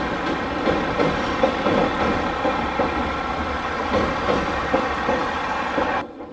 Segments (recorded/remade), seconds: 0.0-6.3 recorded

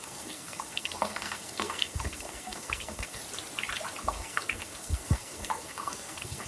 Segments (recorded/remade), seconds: 0.0-3.2 remade; 3.2-4.0 recorded; 4.0-6.5 remade

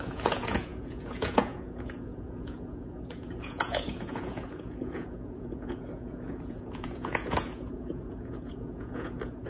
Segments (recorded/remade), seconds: 0.0-9.5 remade

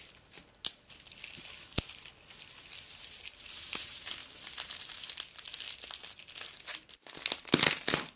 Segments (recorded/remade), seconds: 0.0-8.2 recorded

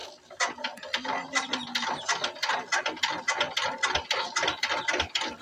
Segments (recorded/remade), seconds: 0.0-5.4 recorded